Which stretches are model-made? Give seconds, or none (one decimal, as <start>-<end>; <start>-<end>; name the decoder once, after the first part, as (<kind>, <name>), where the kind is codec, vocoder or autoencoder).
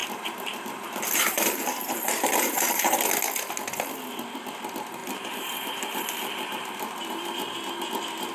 0.0-3.1 (vocoder, BigVGAN v2); 5.0-7.7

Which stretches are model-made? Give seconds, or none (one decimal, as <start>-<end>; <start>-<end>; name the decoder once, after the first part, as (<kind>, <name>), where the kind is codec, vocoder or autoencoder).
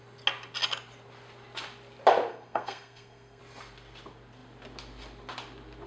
2.3-3.4 (codec, SNAC)